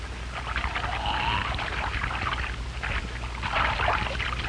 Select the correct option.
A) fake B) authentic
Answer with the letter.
B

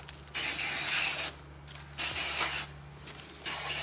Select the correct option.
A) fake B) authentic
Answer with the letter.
B